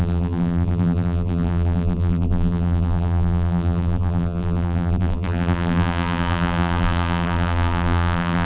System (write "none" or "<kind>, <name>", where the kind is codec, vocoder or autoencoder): vocoder, BigVGAN v2